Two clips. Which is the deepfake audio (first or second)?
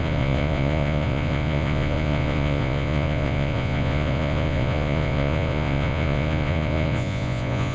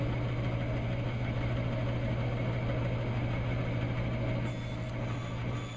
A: first